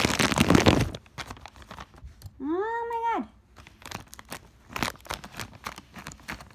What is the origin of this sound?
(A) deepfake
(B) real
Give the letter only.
B